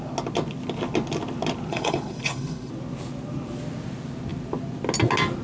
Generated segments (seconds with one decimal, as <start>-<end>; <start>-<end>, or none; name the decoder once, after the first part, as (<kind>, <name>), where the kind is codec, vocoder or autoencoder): 1.7-2.7 (codec, HILCodec)